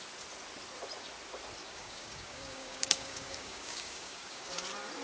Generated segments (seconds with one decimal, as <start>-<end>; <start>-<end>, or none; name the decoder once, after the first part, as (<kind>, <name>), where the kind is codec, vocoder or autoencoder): 1.6-4.5 (codec, DAC)